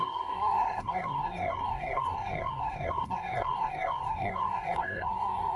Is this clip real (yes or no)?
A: no